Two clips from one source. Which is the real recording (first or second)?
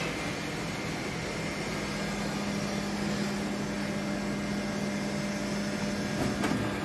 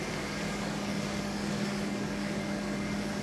first